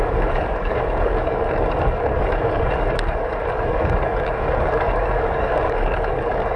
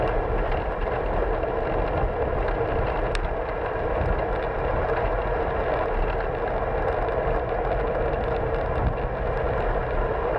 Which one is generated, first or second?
first